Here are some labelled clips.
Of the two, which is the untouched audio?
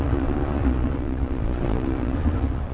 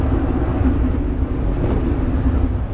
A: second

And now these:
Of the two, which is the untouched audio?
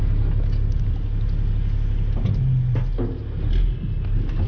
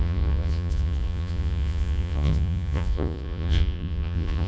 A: first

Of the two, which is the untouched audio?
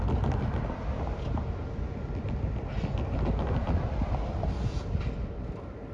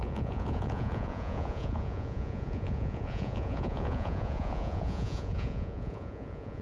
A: first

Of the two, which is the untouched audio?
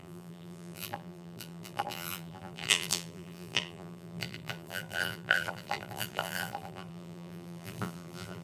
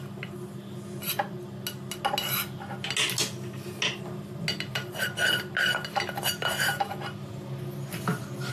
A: second